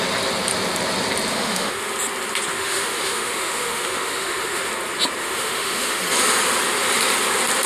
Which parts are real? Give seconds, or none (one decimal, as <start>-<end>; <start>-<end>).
0.0-1.3; 1.8-2.5; 4.7-5.2; 6.0-7.7